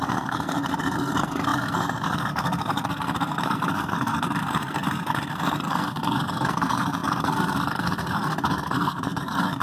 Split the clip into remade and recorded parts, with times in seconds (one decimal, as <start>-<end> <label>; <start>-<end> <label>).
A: 0.0-9.6 remade